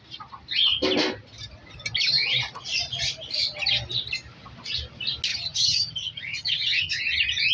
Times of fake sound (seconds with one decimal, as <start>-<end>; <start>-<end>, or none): 5.3-7.0